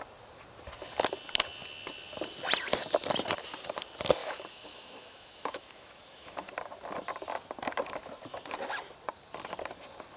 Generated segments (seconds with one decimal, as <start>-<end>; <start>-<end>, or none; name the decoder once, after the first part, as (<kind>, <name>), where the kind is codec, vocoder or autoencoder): 4.2-6.5 (autoencoder, DAC-VAE)